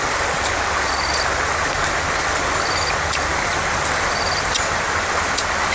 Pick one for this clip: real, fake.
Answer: real